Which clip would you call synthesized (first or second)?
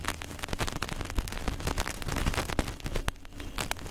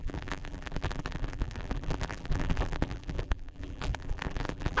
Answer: second